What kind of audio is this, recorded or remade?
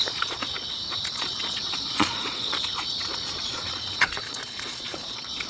remade